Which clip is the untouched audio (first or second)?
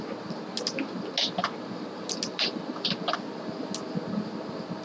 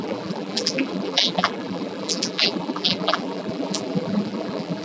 first